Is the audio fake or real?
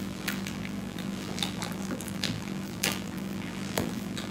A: fake